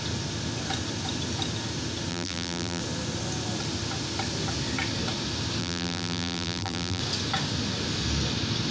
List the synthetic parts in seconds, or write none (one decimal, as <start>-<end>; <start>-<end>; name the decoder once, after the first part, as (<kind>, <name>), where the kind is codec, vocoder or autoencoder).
2.1-2.8 (vocoder, BigVGAN v2); 5.6-7.0